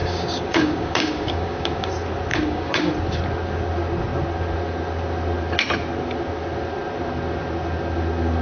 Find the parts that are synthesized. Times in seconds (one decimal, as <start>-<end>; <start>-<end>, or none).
0.0-1.9; 2.3-2.9